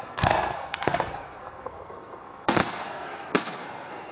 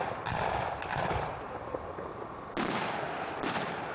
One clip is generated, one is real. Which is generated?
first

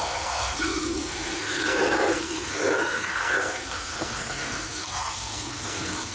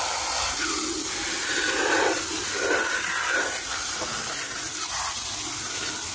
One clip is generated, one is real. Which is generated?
first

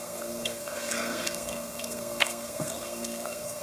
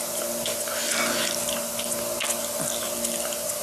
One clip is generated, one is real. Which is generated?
first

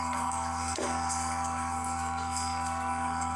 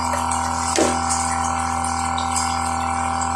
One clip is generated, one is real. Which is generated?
first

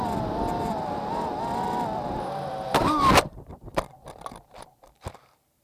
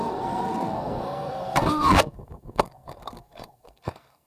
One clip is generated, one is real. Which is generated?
second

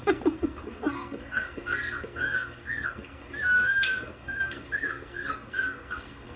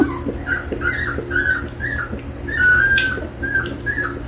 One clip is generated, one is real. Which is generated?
first